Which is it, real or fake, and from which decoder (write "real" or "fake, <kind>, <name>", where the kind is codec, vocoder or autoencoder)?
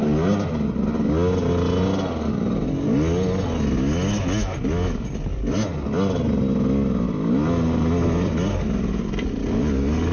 real